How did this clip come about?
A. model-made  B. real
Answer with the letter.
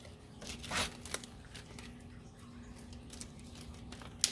B